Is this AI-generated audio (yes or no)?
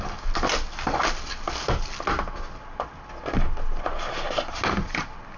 no